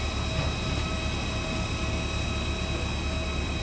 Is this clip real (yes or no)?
yes